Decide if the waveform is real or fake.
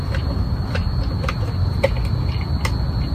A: real